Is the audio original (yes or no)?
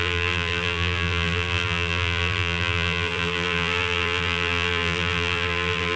no